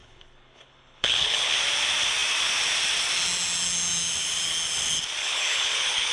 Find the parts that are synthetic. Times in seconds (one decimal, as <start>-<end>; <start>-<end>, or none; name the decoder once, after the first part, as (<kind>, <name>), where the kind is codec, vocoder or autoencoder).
0.0-1.6 (codec, HILCodec); 5.2-6.1